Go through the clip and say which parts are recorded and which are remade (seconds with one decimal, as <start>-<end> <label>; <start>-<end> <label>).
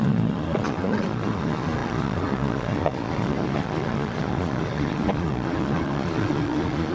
0.0-6.9 remade